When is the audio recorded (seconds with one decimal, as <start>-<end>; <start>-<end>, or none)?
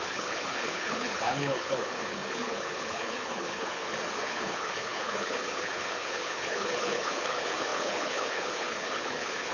none